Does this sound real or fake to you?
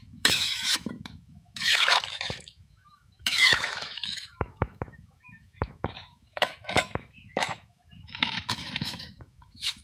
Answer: fake